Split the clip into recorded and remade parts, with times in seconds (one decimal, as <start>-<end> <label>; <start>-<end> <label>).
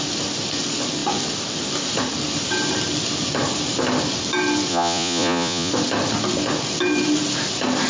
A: 0.0-4.7 recorded; 4.7-5.7 remade; 5.7-7.9 recorded